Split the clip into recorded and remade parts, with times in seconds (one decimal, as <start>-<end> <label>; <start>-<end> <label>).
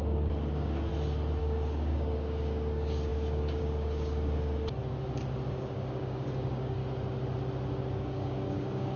0.0-0.9 remade; 0.9-1.4 recorded; 1.4-4.8 remade; 4.8-5.5 recorded; 5.5-6.8 remade; 6.8-7.9 recorded; 7.9-9.0 remade